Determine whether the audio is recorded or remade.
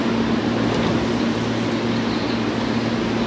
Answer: recorded